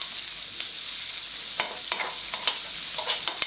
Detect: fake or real real